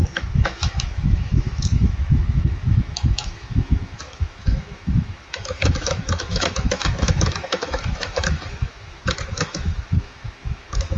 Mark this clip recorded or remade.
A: remade